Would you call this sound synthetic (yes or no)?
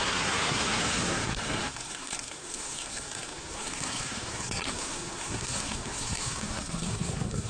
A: yes